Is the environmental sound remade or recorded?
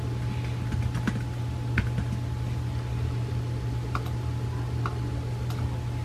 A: recorded